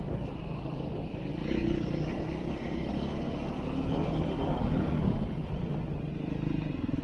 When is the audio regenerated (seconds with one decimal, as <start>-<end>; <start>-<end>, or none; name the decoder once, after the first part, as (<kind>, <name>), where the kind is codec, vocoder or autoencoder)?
none